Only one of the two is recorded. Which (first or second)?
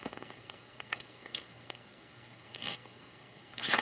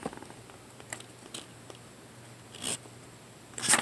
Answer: second